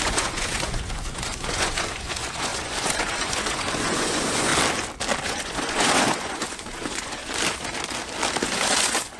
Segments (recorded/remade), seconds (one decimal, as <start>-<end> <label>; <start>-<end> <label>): 0.0-4.5 remade; 4.5-5.2 recorded; 5.2-7.2 remade; 7.2-8.4 recorded; 8.4-9.2 remade